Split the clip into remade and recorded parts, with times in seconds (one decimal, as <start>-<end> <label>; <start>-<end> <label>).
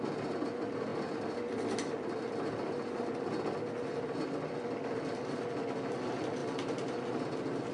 0.0-7.7 recorded